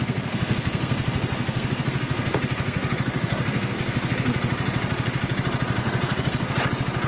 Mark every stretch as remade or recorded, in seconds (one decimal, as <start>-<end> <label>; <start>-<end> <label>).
0.0-4.1 remade; 4.1-5.8 recorded; 5.8-6.5 remade; 6.5-7.1 recorded